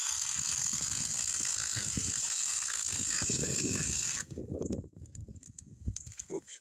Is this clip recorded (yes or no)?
no